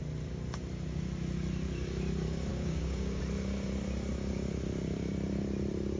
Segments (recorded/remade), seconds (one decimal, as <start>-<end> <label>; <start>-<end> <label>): 0.0-2.5 recorded; 2.5-3.2 remade; 3.2-6.0 recorded